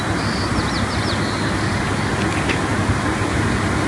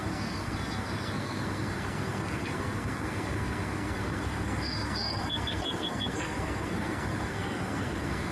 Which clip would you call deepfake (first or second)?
second